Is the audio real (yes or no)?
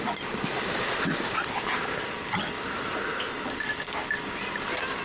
yes